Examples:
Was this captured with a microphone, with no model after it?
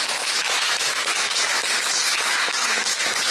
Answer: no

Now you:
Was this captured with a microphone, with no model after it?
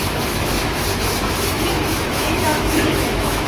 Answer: no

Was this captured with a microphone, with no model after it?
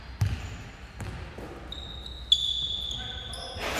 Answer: yes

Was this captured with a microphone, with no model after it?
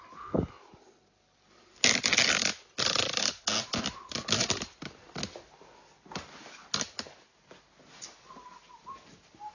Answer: yes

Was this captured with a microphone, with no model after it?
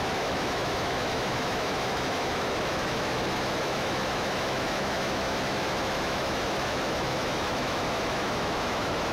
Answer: no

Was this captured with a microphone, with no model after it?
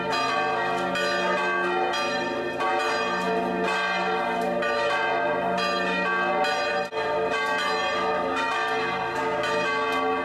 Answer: yes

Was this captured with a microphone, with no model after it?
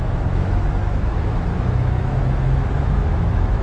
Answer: no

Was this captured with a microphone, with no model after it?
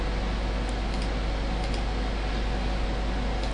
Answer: yes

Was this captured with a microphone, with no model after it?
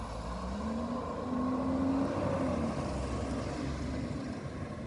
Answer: yes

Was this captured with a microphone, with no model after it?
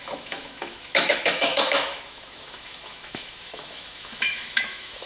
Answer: no